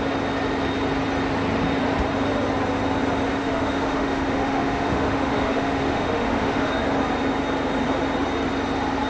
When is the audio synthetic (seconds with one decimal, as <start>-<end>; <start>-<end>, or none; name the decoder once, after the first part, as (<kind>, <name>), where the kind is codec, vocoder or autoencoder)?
3.4-6.7 (autoencoder, DAC-VAE)